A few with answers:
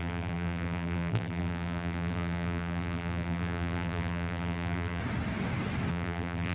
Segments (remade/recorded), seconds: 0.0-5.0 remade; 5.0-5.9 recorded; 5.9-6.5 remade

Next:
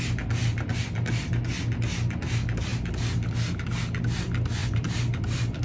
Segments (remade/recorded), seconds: 0.0-0.4 recorded; 0.4-1.3 remade; 1.3-4.6 recorded; 4.6-5.6 remade

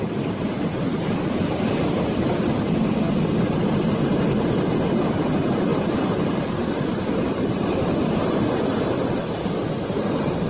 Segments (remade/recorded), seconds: 0.0-5.7 recorded; 5.7-6.6 remade; 6.6-10.5 recorded

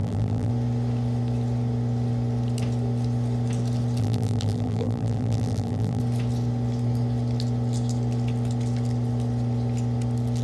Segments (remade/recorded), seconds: 0.0-0.5 remade; 0.5-4.0 recorded; 4.0-6.0 remade; 6.0-10.4 recorded

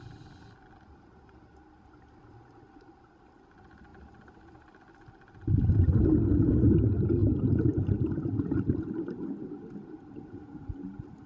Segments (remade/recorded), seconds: 0.0-11.3 recorded

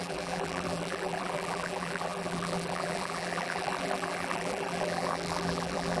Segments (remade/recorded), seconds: 0.0-6.0 remade

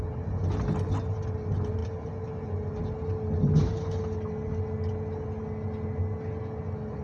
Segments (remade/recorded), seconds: 0.0-7.0 recorded